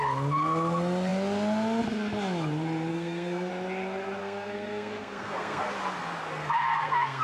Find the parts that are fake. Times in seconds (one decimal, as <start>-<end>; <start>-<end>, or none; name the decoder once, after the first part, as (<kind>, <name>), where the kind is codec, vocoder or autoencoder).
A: 2.9-3.5 (codec, SNAC); 4.2-5.7; 6.4-7.2